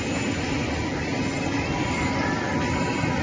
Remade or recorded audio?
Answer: recorded